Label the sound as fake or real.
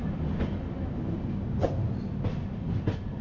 real